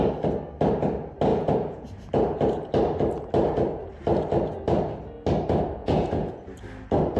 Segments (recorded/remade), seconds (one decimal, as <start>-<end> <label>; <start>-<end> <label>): 0.0-1.3 recorded; 1.3-1.9 remade; 1.9-5.8 recorded; 5.8-6.5 remade; 6.5-7.2 recorded